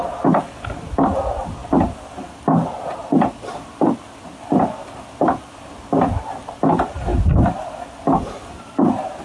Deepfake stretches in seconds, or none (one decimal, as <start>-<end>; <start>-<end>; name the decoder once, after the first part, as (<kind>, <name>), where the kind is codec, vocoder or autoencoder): none